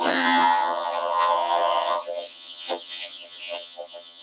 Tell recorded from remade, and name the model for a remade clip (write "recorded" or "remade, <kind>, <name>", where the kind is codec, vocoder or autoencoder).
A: remade, vocoder, HiFi-GAN